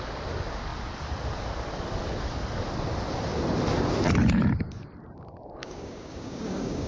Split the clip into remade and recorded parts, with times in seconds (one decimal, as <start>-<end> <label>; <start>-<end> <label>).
0.0-5.6 recorded; 5.6-6.9 remade